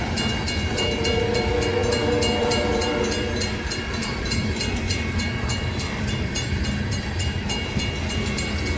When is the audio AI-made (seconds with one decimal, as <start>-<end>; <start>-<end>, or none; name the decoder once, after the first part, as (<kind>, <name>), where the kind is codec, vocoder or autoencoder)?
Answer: 4.0-7.5 (vocoder, BigVGAN v2)